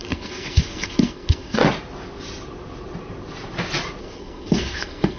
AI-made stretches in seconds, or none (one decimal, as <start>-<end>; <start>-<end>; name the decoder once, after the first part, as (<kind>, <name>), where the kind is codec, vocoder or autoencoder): 0.0-1.6 (codec, SNAC); 4.0-5.2